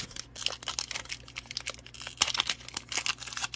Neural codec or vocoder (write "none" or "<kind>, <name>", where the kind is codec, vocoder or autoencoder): none